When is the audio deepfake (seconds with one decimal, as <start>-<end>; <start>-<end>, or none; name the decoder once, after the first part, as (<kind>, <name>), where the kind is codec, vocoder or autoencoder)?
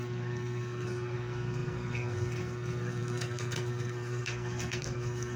0.0-5.4 (codec, SNAC)